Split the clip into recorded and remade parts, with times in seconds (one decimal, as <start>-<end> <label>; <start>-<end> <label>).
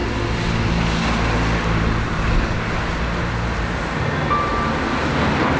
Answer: 0.0-5.6 recorded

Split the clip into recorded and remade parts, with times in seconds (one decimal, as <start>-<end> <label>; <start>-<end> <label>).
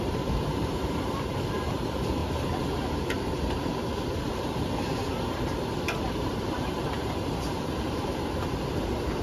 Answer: 0.0-9.2 remade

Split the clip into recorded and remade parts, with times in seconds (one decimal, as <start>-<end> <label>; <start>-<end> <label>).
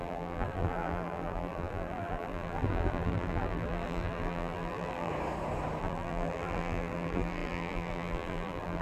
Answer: 0.0-5.1 remade; 5.1-5.8 recorded; 5.8-8.8 remade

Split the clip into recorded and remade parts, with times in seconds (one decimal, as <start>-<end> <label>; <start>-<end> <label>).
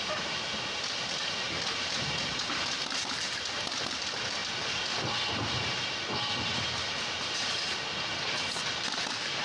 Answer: 0.0-1.7 recorded; 1.7-3.3 remade; 3.3-9.4 recorded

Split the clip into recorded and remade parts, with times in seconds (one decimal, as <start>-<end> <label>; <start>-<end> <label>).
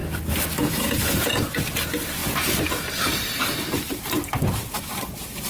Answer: 0.0-0.7 recorded; 0.7-5.5 remade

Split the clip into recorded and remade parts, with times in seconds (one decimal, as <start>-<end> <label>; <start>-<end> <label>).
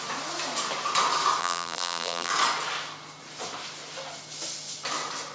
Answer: 0.0-1.4 recorded; 1.4-2.3 remade; 2.3-5.3 recorded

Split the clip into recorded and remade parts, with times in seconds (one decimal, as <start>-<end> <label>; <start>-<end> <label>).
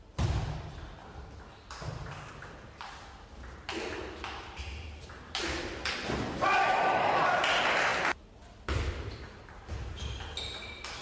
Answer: 0.0-11.0 recorded